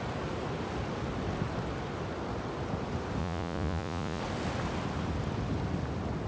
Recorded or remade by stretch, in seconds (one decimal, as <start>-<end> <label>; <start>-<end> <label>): 0.0-3.2 recorded; 3.2-4.2 remade; 4.2-6.3 recorded